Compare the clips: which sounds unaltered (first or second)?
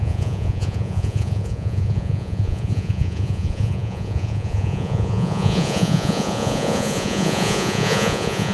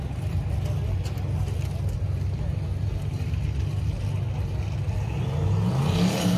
second